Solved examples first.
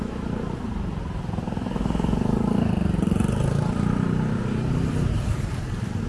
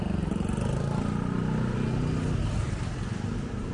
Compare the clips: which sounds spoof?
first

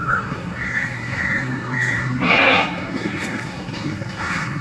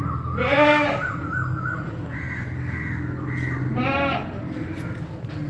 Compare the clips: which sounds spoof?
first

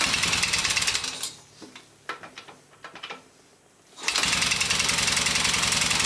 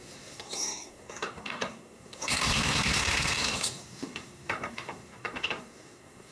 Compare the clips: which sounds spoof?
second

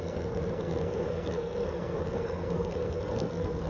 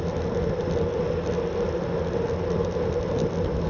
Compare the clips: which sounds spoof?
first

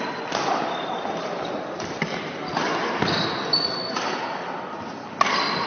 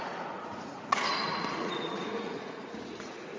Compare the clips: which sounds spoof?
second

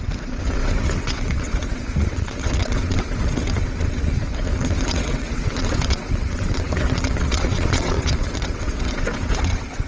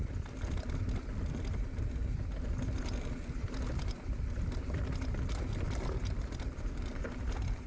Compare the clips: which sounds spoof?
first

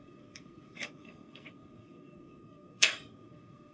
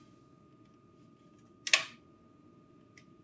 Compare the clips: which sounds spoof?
first